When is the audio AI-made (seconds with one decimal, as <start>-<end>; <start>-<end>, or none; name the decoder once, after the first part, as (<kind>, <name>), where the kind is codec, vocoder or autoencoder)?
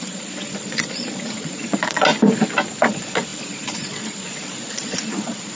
0.0-2.1 (vocoder, Vocos); 2.8-5.5